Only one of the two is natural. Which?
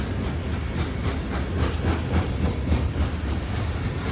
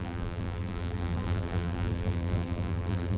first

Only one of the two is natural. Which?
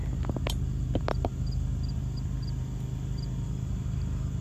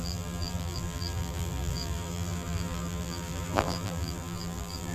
first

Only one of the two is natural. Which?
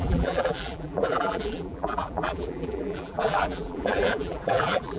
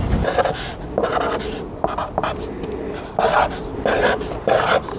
second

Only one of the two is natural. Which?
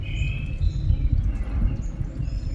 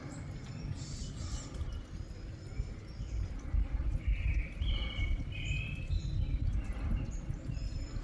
first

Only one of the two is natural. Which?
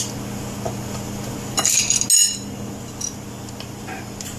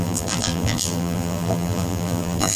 first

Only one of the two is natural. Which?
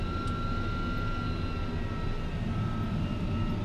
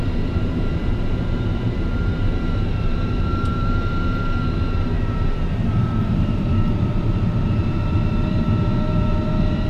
first